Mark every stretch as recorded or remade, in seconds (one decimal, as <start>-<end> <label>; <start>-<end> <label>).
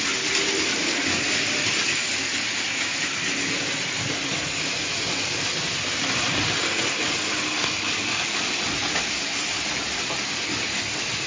0.0-11.3 recorded